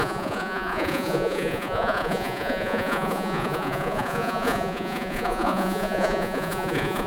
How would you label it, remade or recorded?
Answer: remade